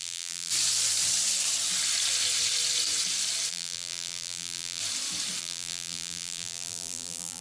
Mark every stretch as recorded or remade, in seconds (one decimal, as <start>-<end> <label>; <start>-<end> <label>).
0.0-0.5 remade; 0.5-3.5 recorded; 3.5-4.8 remade; 4.8-5.4 recorded; 5.4-7.4 remade